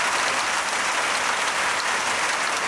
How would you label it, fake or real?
real